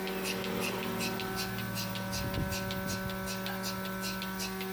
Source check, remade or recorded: recorded